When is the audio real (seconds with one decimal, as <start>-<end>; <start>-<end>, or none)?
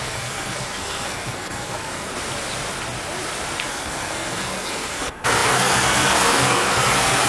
2.1-3.7